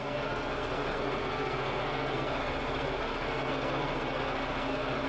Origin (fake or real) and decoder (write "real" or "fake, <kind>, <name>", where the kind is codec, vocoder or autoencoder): fake, codec, SNAC